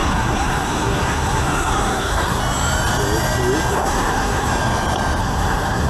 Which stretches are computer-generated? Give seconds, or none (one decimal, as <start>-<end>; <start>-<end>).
0.0-2.4; 3.7-4.5; 5.2-5.9